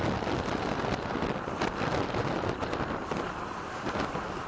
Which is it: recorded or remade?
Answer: recorded